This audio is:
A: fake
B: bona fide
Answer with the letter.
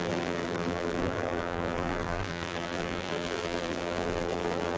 A